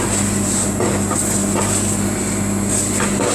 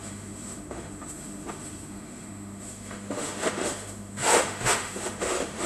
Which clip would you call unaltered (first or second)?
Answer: first